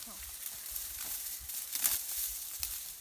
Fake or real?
real